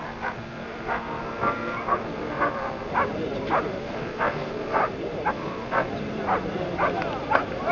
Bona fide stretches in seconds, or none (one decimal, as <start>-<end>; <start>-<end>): 2.9-3.8; 4.8-5.3; 5.9-7.7

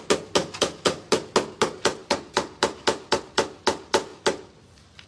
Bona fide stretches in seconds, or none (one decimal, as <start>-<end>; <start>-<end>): 0.0-0.4; 1.2-2.0; 3.2-5.1

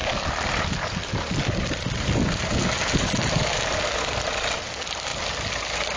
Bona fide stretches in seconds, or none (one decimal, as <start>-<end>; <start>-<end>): 0.0-6.0

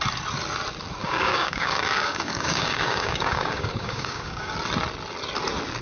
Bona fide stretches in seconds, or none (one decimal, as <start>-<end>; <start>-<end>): 0.0-1.0; 4.5-5.8

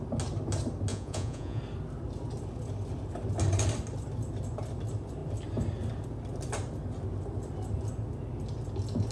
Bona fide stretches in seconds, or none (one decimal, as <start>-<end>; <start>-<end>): 0.0-0.9; 1.6-9.1

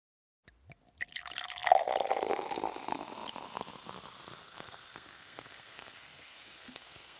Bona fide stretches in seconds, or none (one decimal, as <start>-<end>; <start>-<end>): 0.0-4.4

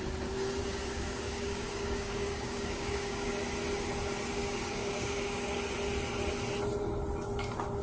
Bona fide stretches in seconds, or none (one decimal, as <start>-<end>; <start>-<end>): 0.0-0.6; 3.3-4.3; 5.6-7.8

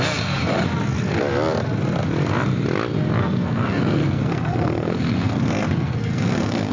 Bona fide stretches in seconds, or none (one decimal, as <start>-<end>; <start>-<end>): 0.0-3.2